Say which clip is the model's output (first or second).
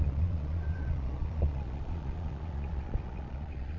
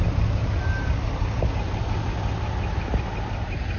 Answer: first